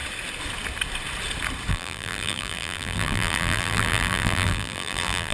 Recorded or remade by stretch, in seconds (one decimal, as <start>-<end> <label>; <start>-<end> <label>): 0.0-1.7 recorded; 1.7-5.3 remade